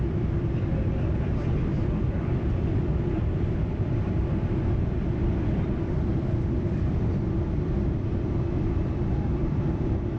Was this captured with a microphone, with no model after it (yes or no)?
no